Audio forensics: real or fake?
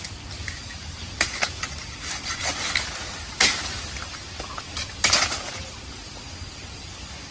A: real